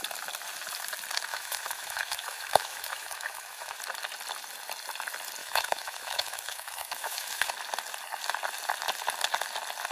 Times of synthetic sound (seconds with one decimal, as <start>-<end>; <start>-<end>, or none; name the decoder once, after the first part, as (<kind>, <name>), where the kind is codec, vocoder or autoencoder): 1.3-3.8 (autoencoder, DAC-VAE); 5.4-7.5